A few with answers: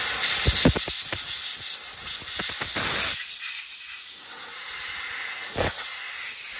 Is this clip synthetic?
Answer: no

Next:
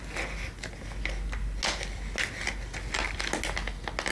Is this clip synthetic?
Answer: no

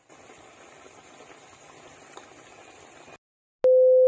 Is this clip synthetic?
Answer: no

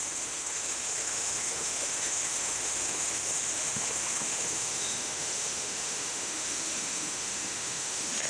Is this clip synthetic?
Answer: yes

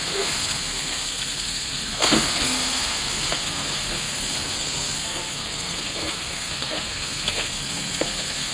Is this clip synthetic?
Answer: yes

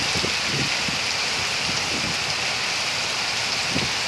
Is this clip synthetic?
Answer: no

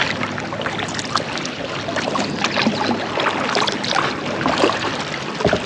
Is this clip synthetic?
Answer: no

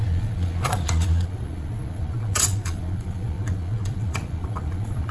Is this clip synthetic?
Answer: yes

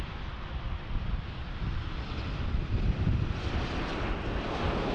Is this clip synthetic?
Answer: no